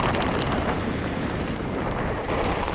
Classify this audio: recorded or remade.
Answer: remade